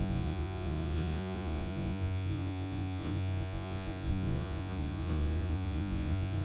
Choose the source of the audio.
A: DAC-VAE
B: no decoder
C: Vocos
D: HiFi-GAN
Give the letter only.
C